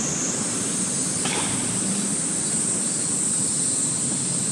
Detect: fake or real real